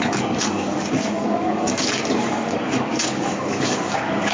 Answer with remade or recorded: remade